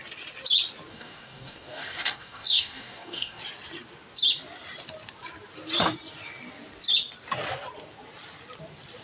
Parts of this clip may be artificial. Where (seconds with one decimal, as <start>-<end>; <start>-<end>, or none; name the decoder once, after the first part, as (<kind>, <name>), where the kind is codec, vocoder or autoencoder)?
0.9-3.4 (codec, DAC)